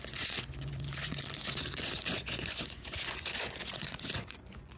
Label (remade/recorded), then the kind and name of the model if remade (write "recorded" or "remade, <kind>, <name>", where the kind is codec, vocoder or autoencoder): remade, vocoder, Vocos